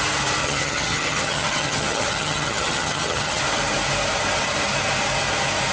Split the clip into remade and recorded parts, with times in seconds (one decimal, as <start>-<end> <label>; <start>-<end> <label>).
0.0-0.4 recorded; 0.4-3.4 remade; 3.4-5.7 recorded